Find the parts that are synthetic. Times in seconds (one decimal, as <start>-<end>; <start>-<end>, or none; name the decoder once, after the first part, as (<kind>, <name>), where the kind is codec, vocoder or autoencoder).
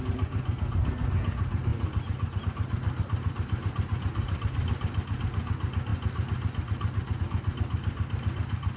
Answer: none